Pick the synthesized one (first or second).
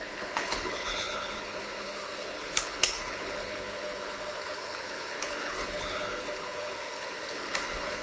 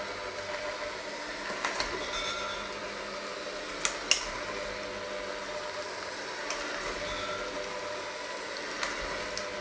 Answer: first